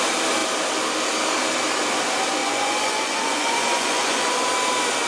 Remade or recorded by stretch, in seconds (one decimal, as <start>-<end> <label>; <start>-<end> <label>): 0.0-2.4 recorded; 2.4-4.5 remade; 4.5-5.1 recorded